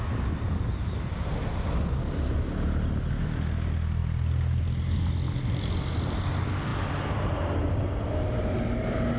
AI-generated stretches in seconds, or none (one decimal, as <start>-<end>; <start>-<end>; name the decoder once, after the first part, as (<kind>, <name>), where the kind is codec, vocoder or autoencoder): none